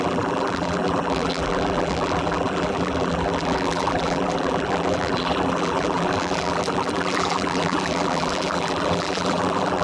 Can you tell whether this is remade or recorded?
remade